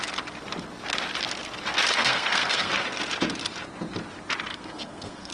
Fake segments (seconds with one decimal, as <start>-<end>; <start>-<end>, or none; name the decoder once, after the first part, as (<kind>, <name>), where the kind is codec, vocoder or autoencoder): 2.0-2.7 (codec, SNAC); 4.5-5.3

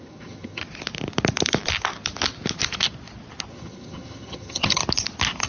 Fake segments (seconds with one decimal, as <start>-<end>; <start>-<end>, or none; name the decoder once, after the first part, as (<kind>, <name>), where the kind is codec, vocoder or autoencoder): 0.0-0.6 (vocoder, HiFi-GAN); 3.5-4.8

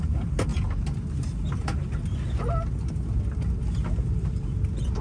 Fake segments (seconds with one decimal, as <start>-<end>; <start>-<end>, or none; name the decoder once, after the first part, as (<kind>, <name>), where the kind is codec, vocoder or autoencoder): none